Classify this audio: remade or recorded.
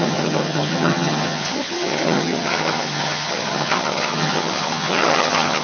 remade